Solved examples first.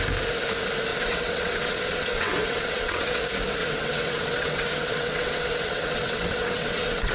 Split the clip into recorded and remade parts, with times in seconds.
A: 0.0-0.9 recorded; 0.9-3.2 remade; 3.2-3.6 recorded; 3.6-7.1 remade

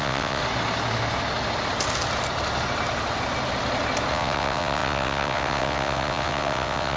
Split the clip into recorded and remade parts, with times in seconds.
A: 0.0-0.4 remade; 0.4-4.1 recorded; 4.1-7.0 remade

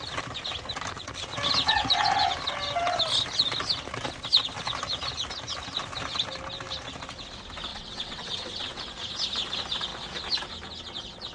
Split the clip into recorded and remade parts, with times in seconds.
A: 0.0-7.7 recorded; 7.7-8.8 remade; 8.8-11.3 recorded

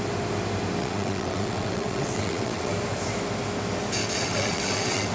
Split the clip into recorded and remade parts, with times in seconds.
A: 0.0-0.8 recorded; 0.8-2.7 remade; 2.7-4.0 recorded; 4.0-5.1 remade

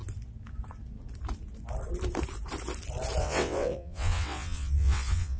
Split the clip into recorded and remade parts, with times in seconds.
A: 0.0-3.2 recorded; 3.2-5.4 remade

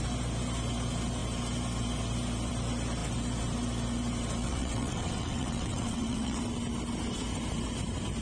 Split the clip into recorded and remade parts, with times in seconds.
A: 0.0-4.4 recorded; 4.4-6.4 remade; 6.4-8.2 recorded

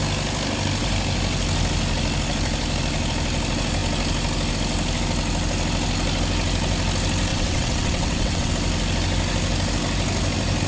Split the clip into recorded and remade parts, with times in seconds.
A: 0.0-7.3 recorded; 7.3-8.5 remade; 8.5-10.7 recorded

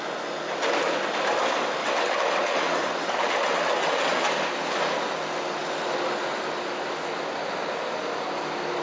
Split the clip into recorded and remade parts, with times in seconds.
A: 0.0-1.8 recorded; 1.8-4.3 remade; 4.3-8.8 recorded